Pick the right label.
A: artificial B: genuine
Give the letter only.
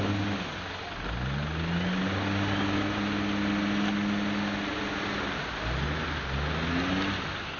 B